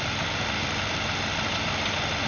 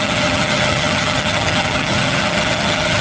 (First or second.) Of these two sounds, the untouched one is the first